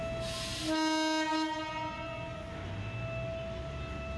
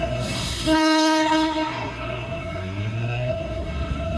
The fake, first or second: second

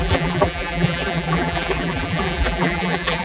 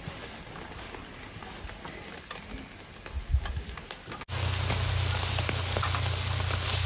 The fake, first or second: first